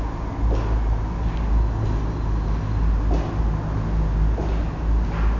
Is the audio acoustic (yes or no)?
yes